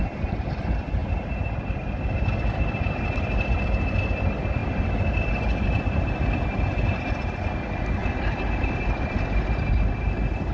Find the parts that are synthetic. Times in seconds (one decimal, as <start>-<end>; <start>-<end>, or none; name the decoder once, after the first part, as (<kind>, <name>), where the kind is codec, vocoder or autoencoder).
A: 4.6-6.7 (vocoder, BigVGAN v2); 8.0-9.2